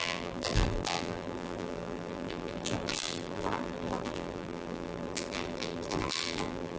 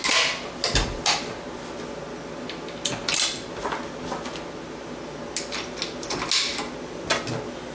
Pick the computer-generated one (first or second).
first